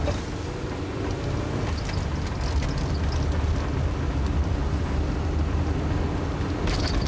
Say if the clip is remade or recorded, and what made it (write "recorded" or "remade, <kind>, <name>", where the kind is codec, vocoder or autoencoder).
recorded